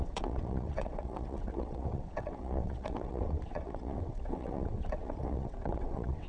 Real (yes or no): no